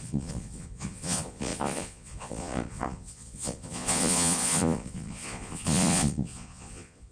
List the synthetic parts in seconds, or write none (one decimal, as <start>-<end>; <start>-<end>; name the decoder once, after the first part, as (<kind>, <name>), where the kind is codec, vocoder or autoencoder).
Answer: 0.0-7.1 (vocoder, Vocos)

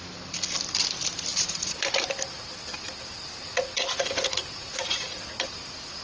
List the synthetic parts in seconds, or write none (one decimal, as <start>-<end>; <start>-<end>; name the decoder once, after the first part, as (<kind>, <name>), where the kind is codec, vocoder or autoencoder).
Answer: 1.3-1.8 (vocoder, Vocos); 3.4-5.3

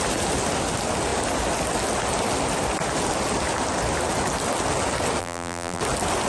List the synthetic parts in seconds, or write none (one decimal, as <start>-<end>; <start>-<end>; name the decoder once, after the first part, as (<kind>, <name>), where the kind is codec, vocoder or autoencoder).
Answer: 5.2-5.8 (vocoder, BigVGAN v2)

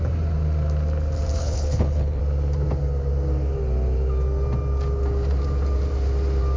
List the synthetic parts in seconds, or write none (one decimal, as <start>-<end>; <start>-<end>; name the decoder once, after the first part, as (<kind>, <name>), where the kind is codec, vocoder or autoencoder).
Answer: 1.4-2.2 (codec, HILCodec)

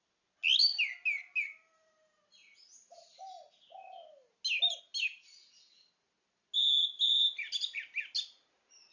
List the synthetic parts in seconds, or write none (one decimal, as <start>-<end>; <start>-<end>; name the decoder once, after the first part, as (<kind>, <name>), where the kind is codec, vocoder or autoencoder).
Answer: none

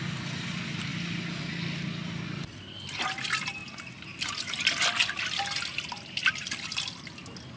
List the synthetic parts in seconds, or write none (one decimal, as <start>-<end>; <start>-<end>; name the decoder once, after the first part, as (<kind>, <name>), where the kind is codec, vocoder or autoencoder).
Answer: none

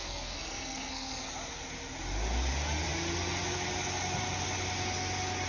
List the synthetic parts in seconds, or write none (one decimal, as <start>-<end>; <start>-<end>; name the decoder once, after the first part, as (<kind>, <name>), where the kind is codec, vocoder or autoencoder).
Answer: 0.0-1.3 (codec, SNAC)